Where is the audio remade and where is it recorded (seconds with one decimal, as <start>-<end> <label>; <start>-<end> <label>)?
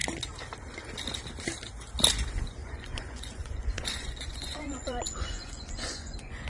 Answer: 0.0-2.6 recorded; 2.6-6.5 remade